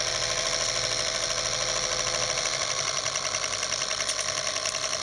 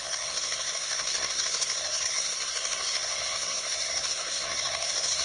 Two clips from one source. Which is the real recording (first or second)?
first